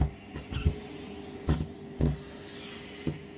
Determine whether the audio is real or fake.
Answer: real